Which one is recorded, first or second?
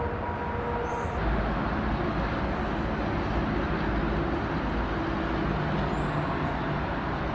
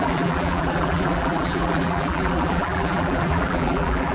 first